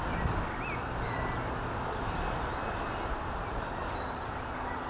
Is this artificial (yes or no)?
no